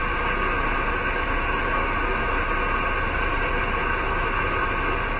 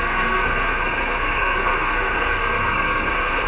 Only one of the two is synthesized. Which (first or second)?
second